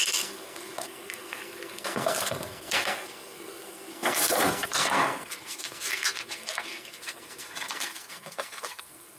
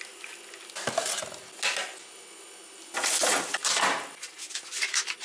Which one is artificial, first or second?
first